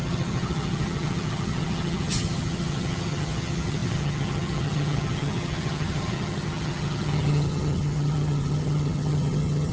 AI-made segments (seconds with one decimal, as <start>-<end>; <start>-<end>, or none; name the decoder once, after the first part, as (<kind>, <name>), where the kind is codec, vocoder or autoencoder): 0.0-9.7 (vocoder, HiFi-GAN)

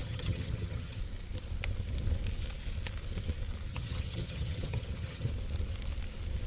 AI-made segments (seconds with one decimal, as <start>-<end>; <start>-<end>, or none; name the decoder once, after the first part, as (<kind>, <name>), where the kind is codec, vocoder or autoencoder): 0.0-1.0 (vocoder, HiFi-GAN); 3.7-5.3

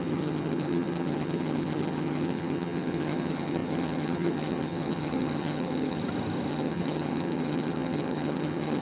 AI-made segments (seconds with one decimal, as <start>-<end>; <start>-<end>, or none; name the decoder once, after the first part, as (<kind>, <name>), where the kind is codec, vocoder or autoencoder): 0.0-6.0 (vocoder, HiFi-GAN); 6.5-8.8

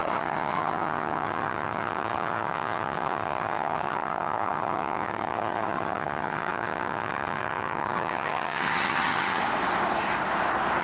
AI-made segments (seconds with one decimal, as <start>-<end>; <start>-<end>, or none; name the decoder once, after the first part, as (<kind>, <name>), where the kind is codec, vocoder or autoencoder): 0.0-9.4 (vocoder, HiFi-GAN)

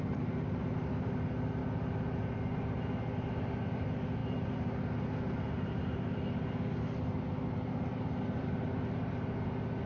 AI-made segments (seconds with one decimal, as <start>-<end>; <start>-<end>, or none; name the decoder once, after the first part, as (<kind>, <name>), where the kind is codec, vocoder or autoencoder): none

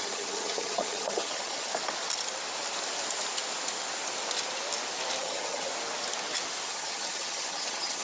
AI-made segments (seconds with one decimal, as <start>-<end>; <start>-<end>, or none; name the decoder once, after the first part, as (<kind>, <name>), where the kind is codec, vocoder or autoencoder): 0.0-1.7 (vocoder, HiFi-GAN); 5.2-5.7; 6.7-8.0

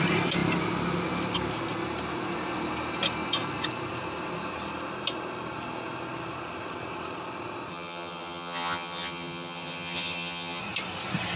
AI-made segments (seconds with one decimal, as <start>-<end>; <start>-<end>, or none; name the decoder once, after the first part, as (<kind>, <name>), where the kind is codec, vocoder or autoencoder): 7.7-10.6 (vocoder, HiFi-GAN)